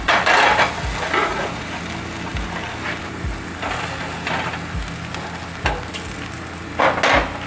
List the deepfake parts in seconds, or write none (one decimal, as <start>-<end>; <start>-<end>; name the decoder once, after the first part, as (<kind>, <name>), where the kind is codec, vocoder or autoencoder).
1.2-1.8 (vocoder, Vocos)